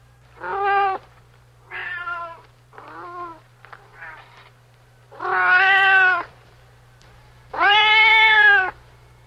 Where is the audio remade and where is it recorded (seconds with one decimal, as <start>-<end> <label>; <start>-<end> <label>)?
0.0-0.5 recorded; 0.5-1.2 remade; 1.2-3.9 recorded; 3.9-8.7 remade; 8.7-9.3 recorded